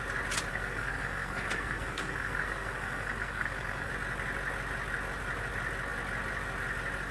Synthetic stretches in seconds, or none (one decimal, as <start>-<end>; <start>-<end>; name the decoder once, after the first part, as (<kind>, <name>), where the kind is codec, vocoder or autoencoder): 0.5-3.9 (codec, SNAC)